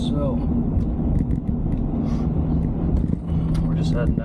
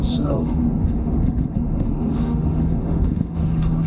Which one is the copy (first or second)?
second